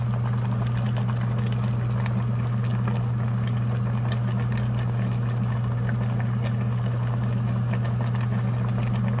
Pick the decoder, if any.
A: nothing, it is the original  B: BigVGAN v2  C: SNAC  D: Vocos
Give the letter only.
A